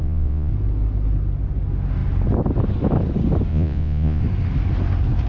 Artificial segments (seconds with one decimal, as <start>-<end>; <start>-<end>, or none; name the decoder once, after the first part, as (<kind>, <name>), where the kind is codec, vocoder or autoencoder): 0.0-0.5 (vocoder, Vocos); 3.5-4.2